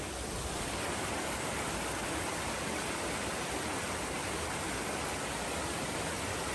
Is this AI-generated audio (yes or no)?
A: no